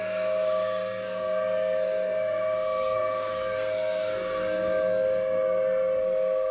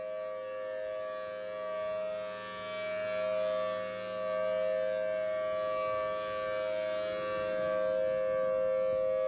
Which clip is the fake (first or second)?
first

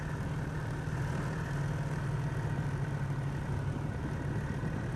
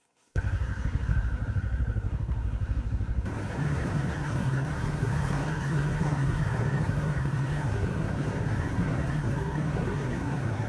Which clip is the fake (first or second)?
second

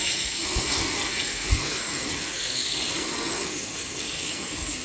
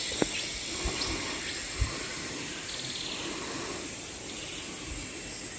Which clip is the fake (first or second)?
first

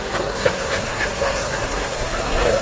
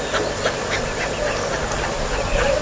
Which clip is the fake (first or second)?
first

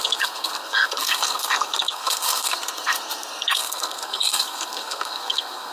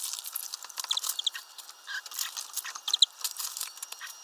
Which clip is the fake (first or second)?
first